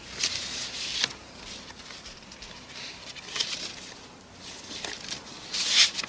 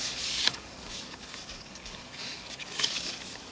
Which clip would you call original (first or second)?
first